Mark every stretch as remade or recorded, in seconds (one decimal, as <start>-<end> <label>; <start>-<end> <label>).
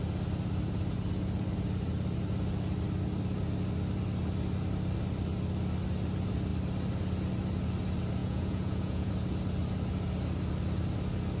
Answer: 0.0-8.2 recorded; 8.2-9.1 remade; 9.1-11.4 recorded